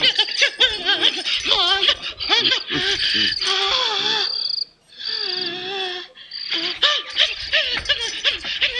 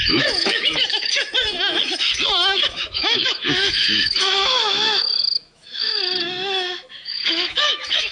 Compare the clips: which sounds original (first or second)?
first